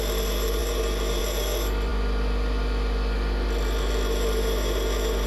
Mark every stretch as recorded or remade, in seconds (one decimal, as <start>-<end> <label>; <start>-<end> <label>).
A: 0.0-5.3 recorded